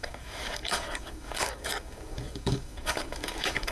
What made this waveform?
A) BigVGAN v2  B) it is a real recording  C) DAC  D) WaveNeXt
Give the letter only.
C